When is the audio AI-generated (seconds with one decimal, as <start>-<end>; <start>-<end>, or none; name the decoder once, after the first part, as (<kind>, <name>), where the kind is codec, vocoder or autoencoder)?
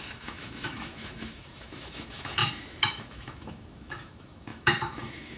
0.0-5.4 (autoencoder, DAC-VAE)